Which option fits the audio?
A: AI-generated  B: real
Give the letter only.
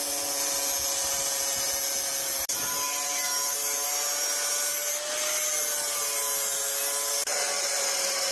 B